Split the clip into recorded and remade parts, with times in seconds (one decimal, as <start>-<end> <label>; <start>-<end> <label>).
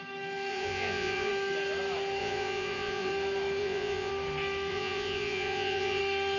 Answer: 0.0-0.5 recorded; 0.5-1.3 remade; 1.3-2.2 recorded; 2.2-3.1 remade; 3.1-3.6 recorded; 3.6-4.1 remade; 4.1-4.7 recorded; 4.7-6.0 remade; 6.0-6.4 recorded